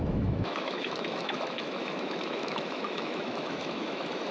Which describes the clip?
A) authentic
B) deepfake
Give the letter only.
B